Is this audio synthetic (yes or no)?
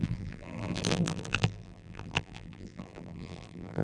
yes